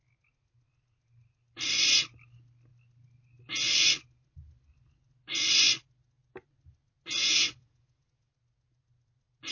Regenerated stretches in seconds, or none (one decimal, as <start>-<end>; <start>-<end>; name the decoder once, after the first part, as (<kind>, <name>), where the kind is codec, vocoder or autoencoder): 7.2-8.3 (vocoder, Vocos)